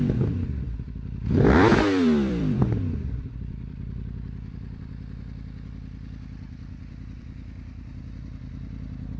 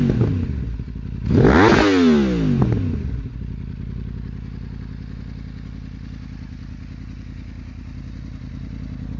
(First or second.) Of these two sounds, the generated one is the first